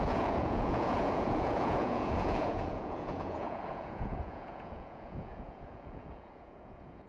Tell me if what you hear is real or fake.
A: fake